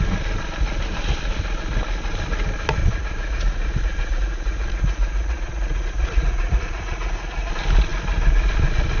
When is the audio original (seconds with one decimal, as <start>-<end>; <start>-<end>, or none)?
0.0-2.8; 7.5-9.0